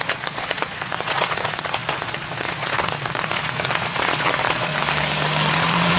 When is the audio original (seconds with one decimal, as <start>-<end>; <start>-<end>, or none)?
4.7-5.5